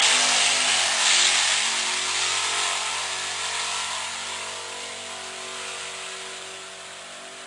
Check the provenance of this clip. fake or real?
real